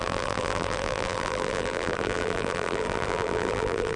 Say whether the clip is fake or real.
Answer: fake